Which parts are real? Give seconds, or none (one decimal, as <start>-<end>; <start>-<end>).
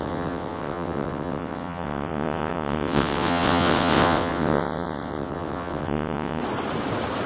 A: 6.4-7.3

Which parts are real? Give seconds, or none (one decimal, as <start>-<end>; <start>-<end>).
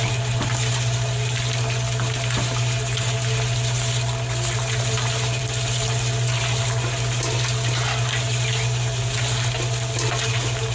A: 0.0-10.7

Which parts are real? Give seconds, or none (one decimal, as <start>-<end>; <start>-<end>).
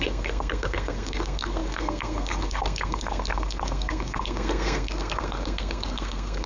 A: none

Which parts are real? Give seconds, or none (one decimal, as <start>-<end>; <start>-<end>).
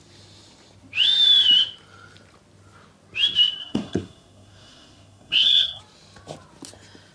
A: 0.0-3.6; 5.8-7.1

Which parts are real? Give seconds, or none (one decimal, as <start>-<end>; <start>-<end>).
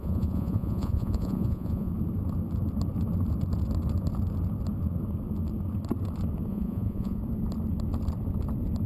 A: 1.9-6.5; 7.2-8.9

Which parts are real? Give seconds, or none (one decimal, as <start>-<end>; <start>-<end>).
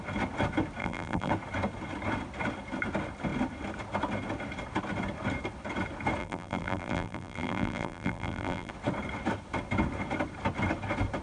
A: 0.0-0.8; 1.3-6.2; 8.7-11.2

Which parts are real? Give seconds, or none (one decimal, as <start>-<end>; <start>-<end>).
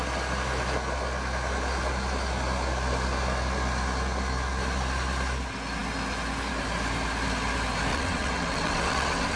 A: 0.0-7.9